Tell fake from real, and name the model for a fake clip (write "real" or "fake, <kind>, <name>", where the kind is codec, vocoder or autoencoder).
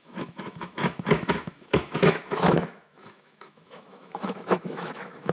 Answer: fake, autoencoder, DAC-VAE